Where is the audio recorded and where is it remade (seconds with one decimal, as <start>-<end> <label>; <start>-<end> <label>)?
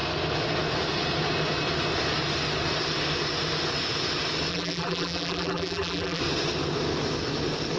0.0-4.5 recorded; 4.5-6.2 remade; 6.2-7.8 recorded